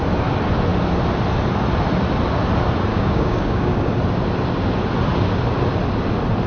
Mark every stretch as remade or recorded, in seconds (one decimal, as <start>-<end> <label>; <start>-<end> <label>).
0.0-2.9 recorded; 2.9-3.9 remade; 3.9-6.5 recorded